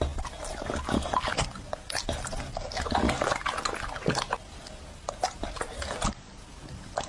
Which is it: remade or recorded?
recorded